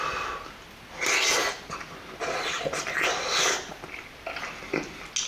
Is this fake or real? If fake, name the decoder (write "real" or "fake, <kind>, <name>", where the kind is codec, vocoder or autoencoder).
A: real